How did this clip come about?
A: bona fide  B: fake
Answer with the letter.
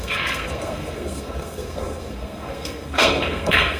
B